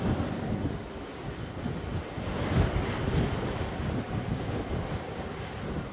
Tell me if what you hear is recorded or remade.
recorded